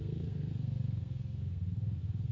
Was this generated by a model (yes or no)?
yes